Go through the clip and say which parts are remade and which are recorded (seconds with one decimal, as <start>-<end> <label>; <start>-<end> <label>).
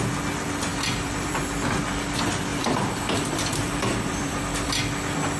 0.0-0.7 recorded; 0.7-1.8 remade; 1.8-2.5 recorded; 2.5-4.7 remade; 4.7-5.4 recorded